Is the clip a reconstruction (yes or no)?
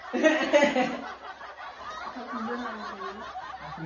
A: no